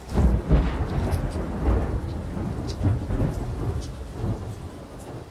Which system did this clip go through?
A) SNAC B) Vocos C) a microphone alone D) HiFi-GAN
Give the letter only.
C